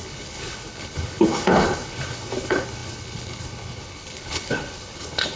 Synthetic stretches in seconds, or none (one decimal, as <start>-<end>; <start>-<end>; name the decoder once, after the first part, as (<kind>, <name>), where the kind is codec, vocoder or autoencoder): 0.0-5.4 (codec, HILCodec)